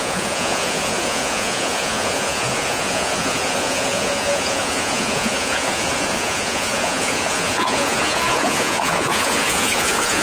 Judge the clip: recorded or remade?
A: remade